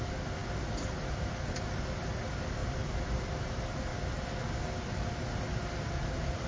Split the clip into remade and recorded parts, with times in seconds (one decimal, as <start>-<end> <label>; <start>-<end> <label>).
0.0-6.5 recorded